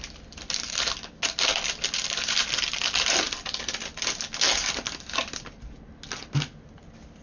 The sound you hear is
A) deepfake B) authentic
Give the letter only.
B